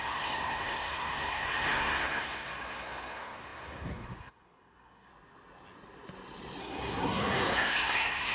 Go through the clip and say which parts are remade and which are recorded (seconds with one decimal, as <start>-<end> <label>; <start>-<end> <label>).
0.0-5.1 remade; 5.1-6.6 recorded; 6.6-8.3 remade

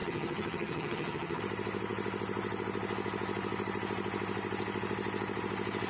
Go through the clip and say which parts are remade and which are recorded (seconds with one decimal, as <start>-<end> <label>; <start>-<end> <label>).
0.0-1.4 remade; 1.4-5.9 recorded

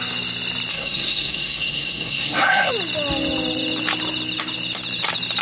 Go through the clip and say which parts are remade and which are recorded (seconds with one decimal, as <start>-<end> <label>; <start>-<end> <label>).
0.0-0.7 recorded; 0.7-2.7 remade; 2.7-5.4 recorded

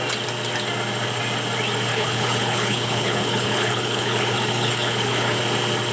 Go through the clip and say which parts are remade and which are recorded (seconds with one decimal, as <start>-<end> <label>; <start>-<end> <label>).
0.0-1.9 recorded; 1.9-5.4 remade; 5.4-5.9 recorded

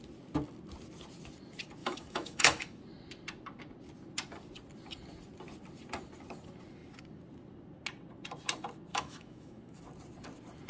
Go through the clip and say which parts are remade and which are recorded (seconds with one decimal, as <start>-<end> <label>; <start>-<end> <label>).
0.0-1.8 recorded; 1.8-2.8 remade; 2.8-8.9 recorded; 8.9-9.8 remade; 9.8-10.7 recorded

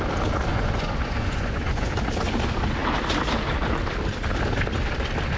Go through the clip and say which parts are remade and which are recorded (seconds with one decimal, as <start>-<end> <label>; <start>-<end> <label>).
0.0-0.5 recorded; 0.5-1.9 remade; 1.9-5.4 recorded

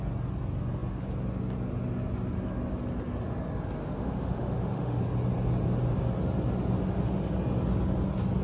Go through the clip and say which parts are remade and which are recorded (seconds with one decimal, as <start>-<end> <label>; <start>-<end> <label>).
0.0-3.8 recorded; 3.8-5.0 remade; 5.0-8.4 recorded